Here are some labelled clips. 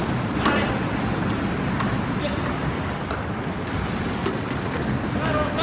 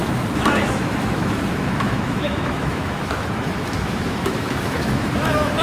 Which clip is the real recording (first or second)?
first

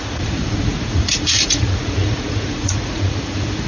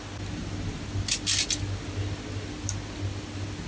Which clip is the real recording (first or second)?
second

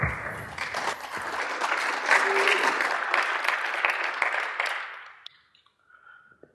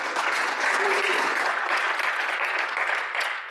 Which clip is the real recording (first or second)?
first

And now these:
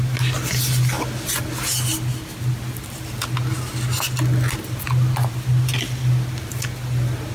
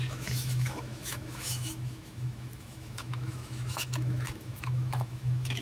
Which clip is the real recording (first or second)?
first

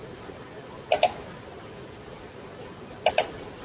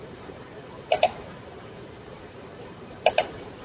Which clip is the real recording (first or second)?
first